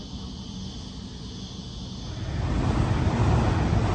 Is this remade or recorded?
recorded